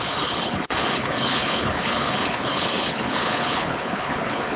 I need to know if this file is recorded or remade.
remade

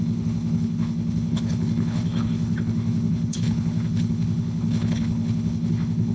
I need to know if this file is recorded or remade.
remade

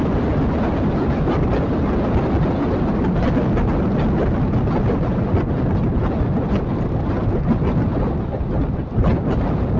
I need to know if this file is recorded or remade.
recorded